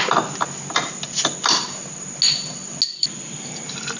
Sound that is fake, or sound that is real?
real